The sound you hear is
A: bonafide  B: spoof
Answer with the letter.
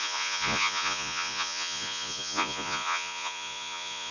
B